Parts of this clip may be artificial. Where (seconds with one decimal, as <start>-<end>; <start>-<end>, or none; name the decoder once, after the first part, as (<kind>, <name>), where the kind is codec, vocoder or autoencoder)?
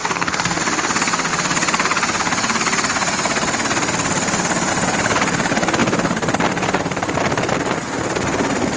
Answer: 0.0-0.6 (codec, SNAC)